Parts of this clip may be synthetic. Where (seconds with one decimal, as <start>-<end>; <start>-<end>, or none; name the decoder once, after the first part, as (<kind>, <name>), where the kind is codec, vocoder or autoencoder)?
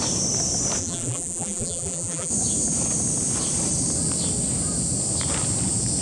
0.8-2.3 (vocoder, BigVGAN v2)